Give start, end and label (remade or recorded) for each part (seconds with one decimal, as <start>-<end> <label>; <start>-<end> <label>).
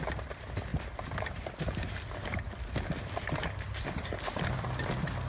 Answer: 0.0-5.3 recorded